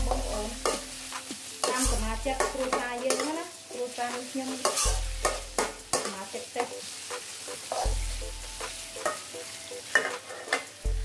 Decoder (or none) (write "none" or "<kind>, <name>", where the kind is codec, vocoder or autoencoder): none